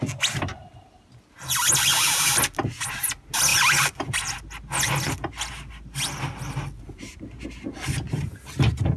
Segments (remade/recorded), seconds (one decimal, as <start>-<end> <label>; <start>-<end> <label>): 0.0-9.0 recorded